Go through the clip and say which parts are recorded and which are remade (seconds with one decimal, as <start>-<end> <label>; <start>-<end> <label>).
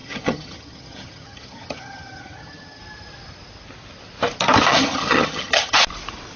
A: 0.0-2.8 remade; 2.8-4.7 recorded; 4.7-5.8 remade; 5.8-6.4 recorded